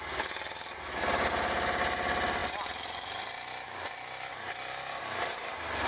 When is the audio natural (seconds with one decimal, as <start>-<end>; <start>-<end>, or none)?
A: 0.0-2.4; 5.5-5.9